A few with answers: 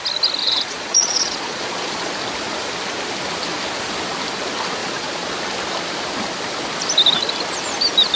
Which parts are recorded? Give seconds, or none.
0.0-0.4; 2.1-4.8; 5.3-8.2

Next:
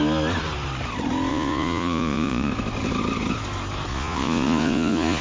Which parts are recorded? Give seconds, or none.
0.0-1.3; 2.5-3.9

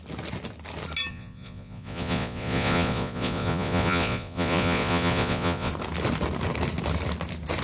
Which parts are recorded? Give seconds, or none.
0.0-1.1; 5.7-7.6

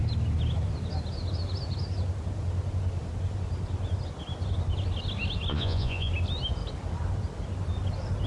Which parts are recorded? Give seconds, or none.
0.0-5.5; 6.1-8.3

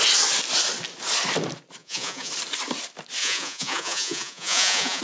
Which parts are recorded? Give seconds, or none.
0.0-1.8; 2.3-3.2

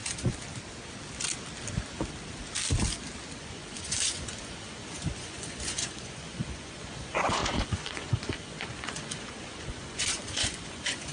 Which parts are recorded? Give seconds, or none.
0.0-3.4